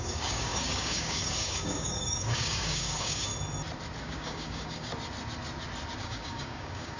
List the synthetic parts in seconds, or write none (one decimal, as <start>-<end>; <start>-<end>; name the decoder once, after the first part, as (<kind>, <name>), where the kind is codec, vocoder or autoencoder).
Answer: 0.0-3.3 (codec, DAC); 4.0-4.9; 6.0-7.0